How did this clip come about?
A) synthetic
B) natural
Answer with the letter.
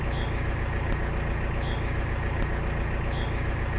B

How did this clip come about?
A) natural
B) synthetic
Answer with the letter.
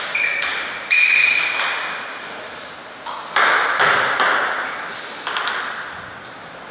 A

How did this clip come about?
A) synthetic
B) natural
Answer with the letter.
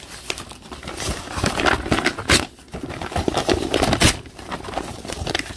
B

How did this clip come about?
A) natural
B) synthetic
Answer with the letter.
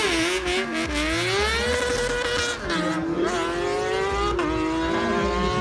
A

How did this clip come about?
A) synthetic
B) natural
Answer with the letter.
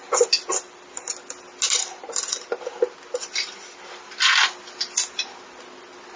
B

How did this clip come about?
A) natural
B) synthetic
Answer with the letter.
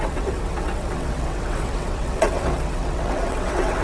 B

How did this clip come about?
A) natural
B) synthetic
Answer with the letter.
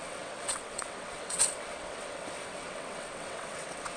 B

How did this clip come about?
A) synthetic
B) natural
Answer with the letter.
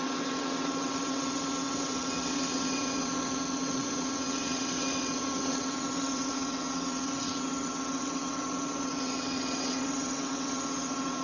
A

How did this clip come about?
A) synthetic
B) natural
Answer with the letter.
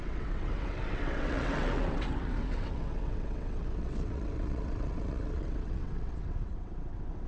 A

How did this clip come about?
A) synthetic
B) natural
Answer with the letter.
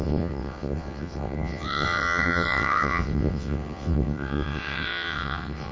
A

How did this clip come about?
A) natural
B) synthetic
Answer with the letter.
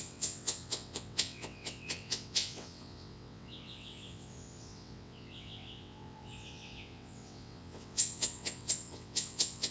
B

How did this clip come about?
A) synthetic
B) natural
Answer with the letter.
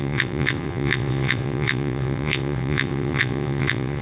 A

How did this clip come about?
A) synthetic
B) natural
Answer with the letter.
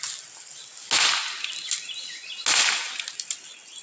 B